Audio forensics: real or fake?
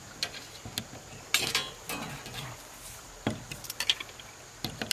real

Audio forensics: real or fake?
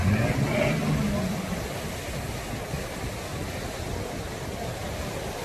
real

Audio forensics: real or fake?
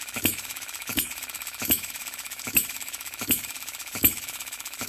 fake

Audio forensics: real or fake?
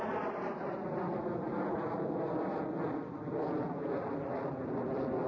real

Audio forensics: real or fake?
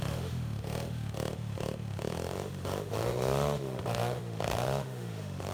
fake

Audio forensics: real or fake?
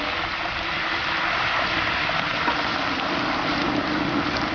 real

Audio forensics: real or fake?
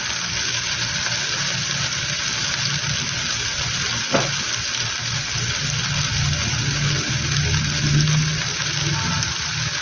real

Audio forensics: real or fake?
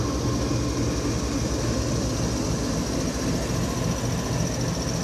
real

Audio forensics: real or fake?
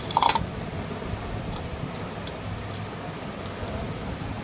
real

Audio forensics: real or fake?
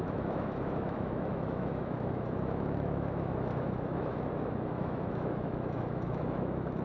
fake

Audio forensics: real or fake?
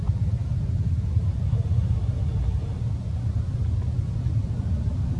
real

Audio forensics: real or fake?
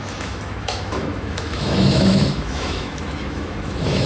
fake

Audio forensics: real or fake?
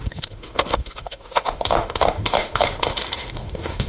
fake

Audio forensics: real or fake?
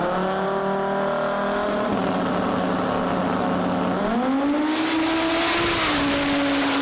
real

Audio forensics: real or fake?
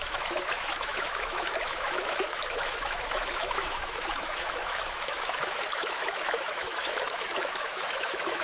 fake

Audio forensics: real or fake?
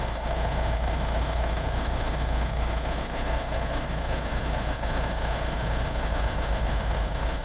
fake